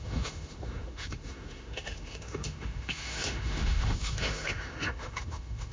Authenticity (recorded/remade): remade